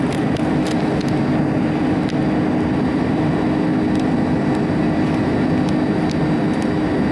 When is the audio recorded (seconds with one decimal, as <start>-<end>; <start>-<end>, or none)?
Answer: 0.0-7.1